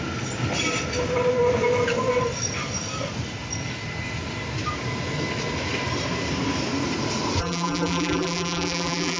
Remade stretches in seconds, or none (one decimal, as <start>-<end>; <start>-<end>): 7.4-9.2